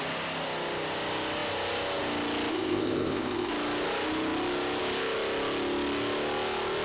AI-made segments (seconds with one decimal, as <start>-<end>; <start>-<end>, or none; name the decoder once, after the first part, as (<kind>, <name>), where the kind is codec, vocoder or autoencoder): 2.5-3.5 (codec, ZipCodec)